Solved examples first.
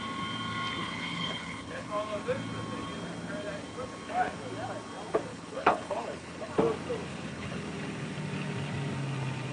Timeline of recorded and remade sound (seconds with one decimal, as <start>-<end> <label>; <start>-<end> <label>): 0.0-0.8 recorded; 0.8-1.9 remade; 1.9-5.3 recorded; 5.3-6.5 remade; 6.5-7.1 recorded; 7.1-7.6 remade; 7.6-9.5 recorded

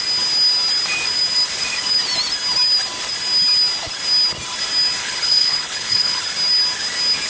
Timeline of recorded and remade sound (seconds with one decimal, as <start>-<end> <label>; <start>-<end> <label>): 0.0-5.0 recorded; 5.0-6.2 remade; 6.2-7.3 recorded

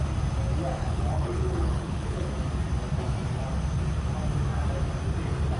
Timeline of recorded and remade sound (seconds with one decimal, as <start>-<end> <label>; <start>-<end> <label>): 0.0-0.8 recorded; 0.8-2.3 remade; 2.3-5.6 recorded